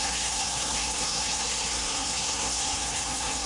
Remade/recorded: remade